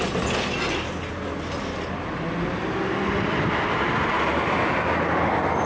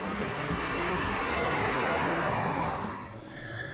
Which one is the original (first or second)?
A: first